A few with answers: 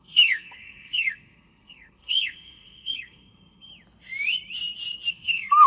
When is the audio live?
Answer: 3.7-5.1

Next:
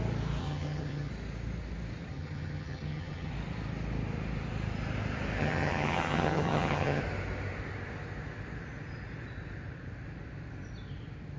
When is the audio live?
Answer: 0.0-0.4; 1.1-2.1; 3.3-5.4; 7.0-11.4

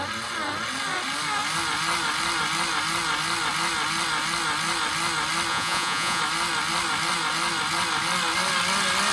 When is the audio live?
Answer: 0.0-5.5; 6.2-9.1

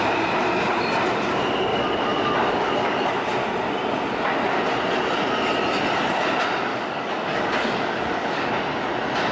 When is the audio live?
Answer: 0.0-1.7; 2.7-6.7; 8.5-9.3

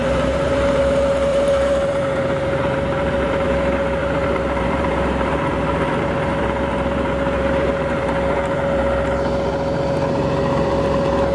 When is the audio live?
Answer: 0.8-1.3; 3.5-4.0; 8.8-11.3

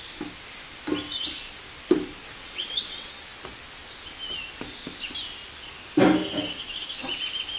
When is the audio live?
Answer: 0.0-2.4; 3.1-7.6